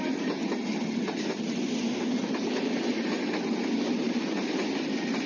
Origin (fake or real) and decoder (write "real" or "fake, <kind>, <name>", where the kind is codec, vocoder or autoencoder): real